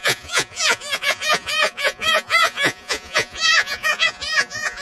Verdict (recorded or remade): remade